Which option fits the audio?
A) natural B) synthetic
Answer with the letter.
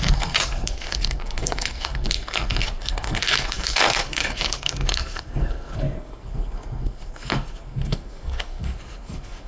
B